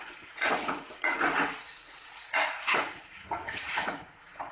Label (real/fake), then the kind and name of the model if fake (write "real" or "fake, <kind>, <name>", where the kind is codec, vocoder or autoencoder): fake, vocoder, Vocos